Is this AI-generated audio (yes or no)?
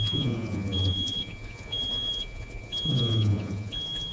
yes